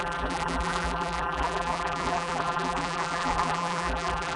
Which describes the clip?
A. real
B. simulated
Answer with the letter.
B